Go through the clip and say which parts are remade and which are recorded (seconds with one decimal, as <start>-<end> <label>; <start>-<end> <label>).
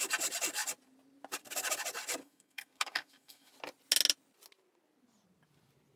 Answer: 0.0-2.2 recorded; 2.2-3.5 remade; 3.5-6.0 recorded